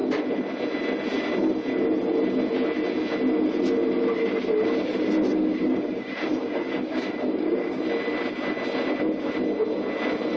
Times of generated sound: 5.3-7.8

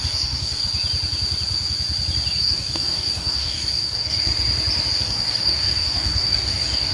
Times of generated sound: 0.0-0.6; 2.4-4.3; 4.9-6.9

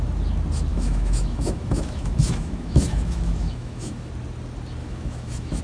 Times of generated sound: 0.7-4.1; 4.8-5.6

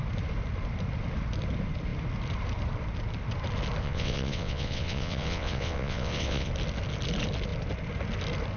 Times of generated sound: 3.8-6.5

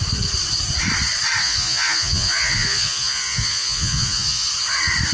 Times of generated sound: 1.4-4.5